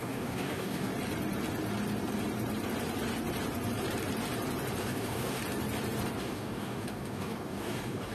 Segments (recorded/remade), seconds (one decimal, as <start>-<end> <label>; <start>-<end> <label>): 0.0-0.9 remade; 0.9-4.8 recorded; 4.8-5.4 remade; 5.4-6.2 recorded; 6.2-8.1 remade